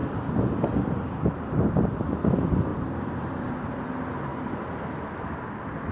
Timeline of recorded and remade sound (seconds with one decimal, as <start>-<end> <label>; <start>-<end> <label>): 0.0-5.9 recorded